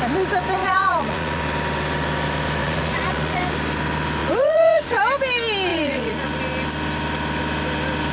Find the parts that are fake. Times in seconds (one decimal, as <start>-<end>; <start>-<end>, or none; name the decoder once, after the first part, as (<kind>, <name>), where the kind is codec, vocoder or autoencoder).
0.6-1.4 (vocoder, Vocos); 2.6-3.4; 4.2-5.0; 5.7-6.3